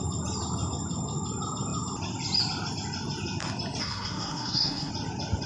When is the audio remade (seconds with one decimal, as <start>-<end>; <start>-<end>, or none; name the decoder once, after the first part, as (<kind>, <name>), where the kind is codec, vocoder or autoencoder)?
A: 3.8-4.9 (codec, SNAC)